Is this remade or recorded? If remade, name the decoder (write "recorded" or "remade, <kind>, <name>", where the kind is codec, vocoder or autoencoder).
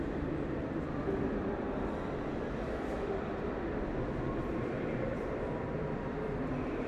remade, vocoder, BigVGAN v2